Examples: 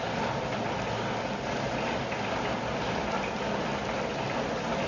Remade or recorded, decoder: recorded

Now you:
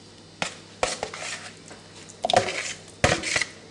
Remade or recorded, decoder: recorded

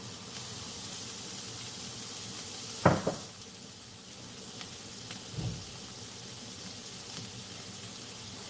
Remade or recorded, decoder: recorded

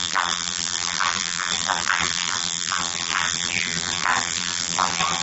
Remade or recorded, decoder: remade, vocoder, BigVGAN v2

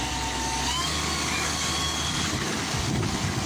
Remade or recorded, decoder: remade, codec, DAC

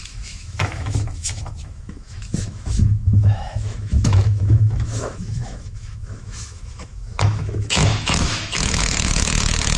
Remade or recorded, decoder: remade, autoencoder, DAC-VAE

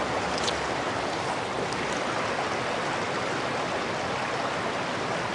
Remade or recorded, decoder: recorded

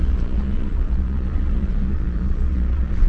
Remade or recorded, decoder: remade, vocoder, Vocos